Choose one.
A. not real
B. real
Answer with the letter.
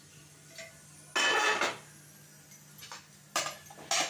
B